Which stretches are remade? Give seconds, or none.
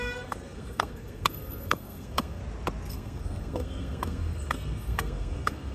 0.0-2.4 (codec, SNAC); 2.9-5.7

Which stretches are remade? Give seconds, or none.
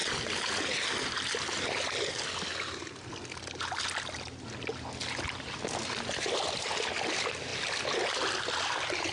none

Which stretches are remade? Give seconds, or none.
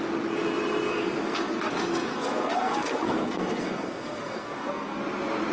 0.9-1.7 (codec, SNAC); 2.1-5.0